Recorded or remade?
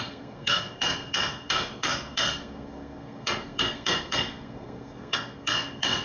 remade